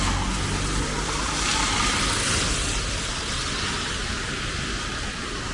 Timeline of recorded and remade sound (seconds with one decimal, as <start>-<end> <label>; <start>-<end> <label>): 0.0-5.5 recorded

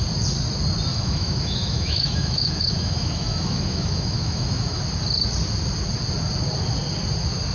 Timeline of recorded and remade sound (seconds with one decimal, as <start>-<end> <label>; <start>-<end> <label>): 0.0-0.9 recorded; 0.9-4.8 remade; 4.8-7.5 recorded

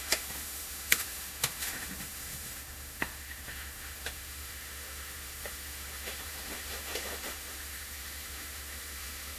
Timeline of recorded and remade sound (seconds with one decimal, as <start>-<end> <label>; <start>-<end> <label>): 0.0-9.4 remade

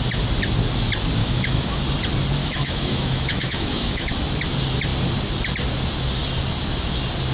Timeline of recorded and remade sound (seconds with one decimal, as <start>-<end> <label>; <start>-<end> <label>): 0.0-1.2 recorded; 1.2-1.8 remade; 1.8-2.4 recorded; 2.4-4.1 remade; 4.1-7.3 recorded

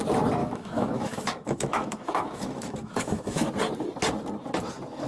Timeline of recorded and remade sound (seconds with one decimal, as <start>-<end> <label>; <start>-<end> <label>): 0.0-0.4 recorded; 0.4-3.5 remade; 3.5-5.1 recorded

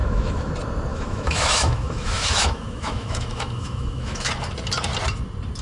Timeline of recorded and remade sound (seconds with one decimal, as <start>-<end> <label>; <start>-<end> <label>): 0.0-0.5 remade; 0.5-0.9 recorded; 0.9-4.3 remade; 4.3-5.6 recorded

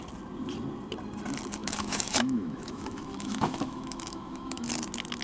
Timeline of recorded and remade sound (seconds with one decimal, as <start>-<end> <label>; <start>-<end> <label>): 0.0-1.6 recorded; 1.6-4.7 remade; 4.7-5.2 recorded